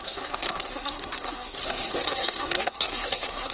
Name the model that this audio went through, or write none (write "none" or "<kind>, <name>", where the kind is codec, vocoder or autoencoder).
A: codec, SNAC